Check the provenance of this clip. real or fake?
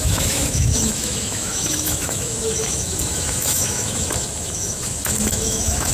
fake